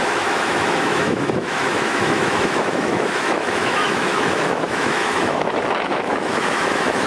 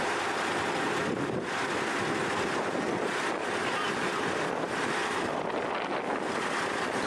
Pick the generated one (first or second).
first